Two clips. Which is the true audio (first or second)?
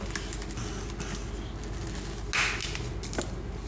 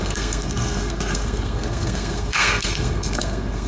first